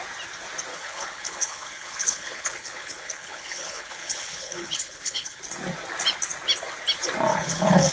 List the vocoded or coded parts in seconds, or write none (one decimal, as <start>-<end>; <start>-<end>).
0.7-5.4; 7.3-7.9